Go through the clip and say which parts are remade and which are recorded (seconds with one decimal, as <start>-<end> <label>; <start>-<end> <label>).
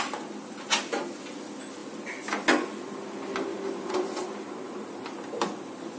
0.0-6.0 recorded